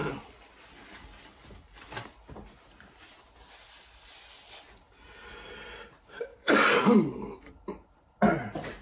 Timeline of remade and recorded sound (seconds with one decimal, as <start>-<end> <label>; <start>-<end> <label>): 0.0-6.3 recorded; 6.3-7.5 remade; 7.5-8.8 recorded